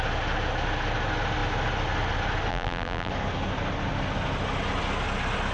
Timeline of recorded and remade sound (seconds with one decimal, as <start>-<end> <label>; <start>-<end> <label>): 0.0-2.5 recorded; 2.5-3.1 remade; 3.1-5.5 recorded